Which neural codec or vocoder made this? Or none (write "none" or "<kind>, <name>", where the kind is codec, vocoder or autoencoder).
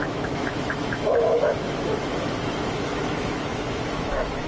autoencoder, DAC-VAE